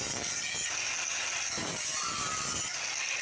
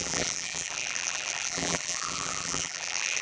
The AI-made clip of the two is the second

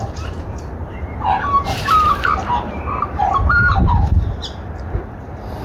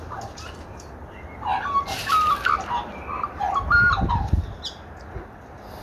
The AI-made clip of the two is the first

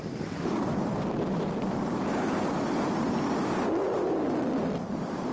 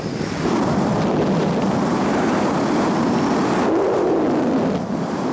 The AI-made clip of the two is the first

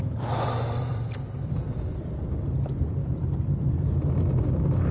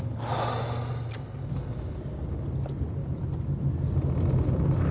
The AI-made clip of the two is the first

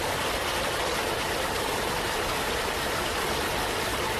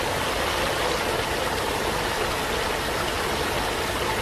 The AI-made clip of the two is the first